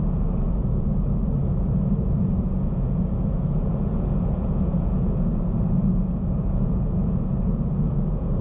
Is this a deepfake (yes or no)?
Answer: yes